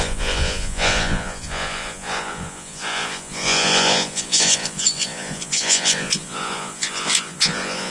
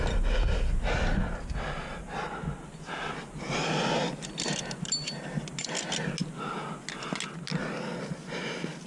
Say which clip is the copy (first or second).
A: first